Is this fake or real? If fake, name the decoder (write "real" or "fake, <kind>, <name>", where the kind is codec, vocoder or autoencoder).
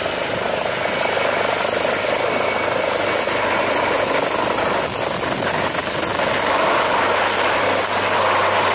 real